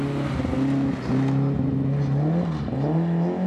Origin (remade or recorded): recorded